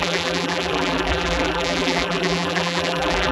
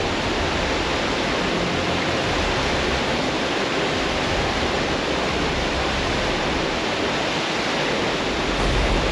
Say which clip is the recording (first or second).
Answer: second